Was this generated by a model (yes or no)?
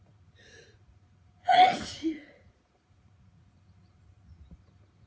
yes